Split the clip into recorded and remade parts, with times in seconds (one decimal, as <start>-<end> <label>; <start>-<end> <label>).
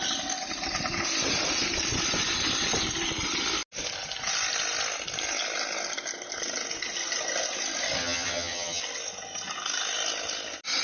0.0-8.0 recorded; 8.0-8.8 remade; 8.8-10.8 recorded